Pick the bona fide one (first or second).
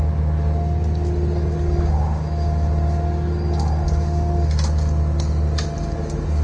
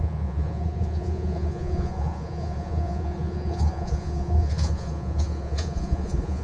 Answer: first